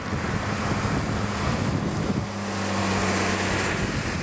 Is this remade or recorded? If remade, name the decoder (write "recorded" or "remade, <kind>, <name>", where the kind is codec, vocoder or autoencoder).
recorded